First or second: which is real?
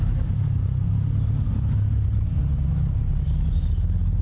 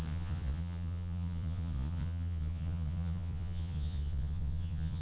first